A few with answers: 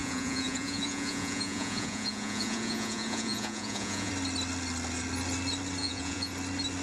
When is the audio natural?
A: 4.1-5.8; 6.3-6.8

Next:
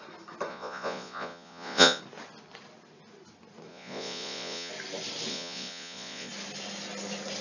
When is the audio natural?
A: 0.0-0.5; 2.0-3.7; 4.7-5.3; 6.3-7.4

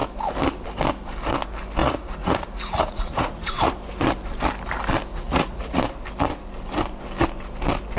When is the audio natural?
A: 0.0-1.8; 3.7-5.1; 5.8-8.0

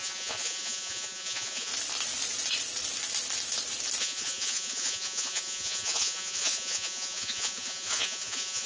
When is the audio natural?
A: 1.7-4.0

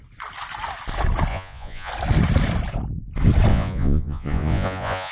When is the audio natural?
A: 0.0-1.3; 1.9-3.5

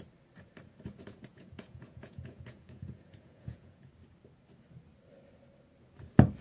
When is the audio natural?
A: 0.0-1.3; 3.9-6.4

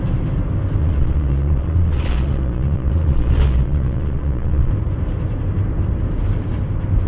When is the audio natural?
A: 0.0-0.8; 4.7-7.1